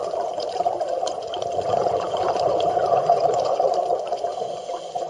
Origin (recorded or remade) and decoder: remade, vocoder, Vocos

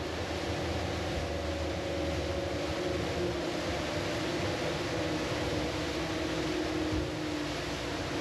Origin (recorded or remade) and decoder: recorded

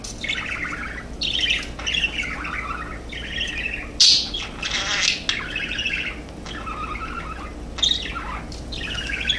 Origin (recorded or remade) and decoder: recorded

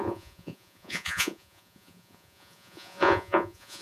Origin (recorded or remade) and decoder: remade, vocoder, Vocos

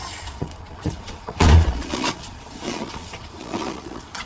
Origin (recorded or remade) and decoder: remade, vocoder, Vocos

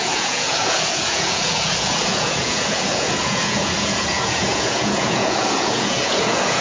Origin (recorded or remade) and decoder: remade, vocoder, Vocos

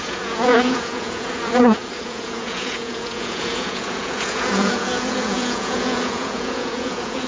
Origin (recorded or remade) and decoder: remade, vocoder, Vocos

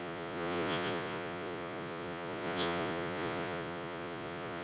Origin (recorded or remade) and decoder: remade, vocoder, Vocos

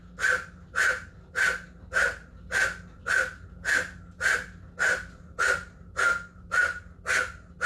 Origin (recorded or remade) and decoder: recorded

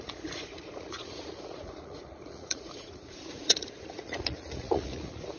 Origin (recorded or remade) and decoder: remade, vocoder, Vocos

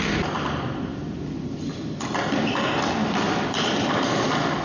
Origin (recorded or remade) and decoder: recorded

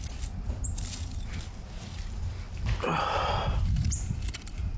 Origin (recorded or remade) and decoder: recorded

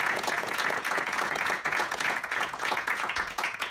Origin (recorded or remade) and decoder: remade, vocoder, Vocos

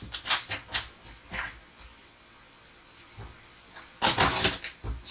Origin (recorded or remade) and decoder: recorded